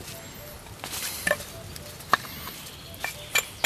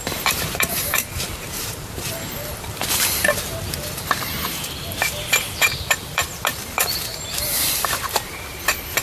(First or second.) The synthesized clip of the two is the second